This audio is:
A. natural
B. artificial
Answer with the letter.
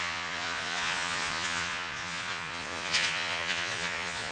B